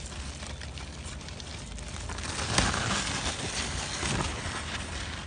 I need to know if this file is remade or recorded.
recorded